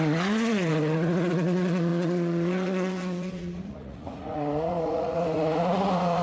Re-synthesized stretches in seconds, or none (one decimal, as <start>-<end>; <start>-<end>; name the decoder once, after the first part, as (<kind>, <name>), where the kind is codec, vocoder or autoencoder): 0.0-6.2 (vocoder, Vocos)

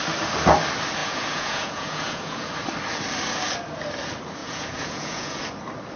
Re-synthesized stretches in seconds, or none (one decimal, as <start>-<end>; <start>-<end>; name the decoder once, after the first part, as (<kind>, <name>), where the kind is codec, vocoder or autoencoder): 1.0-2.5 (vocoder, Vocos); 4.4-5.4

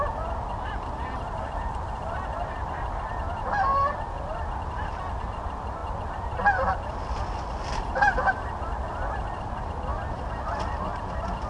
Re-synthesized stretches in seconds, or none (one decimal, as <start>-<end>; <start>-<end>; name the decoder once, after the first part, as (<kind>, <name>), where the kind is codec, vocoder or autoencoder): none